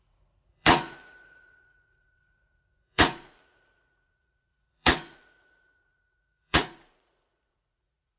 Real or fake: fake